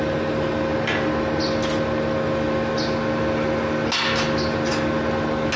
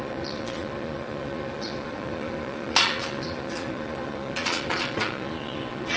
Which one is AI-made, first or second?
second